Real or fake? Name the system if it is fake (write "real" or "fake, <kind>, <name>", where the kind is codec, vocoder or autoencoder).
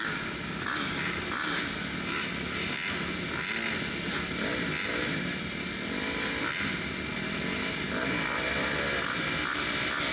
real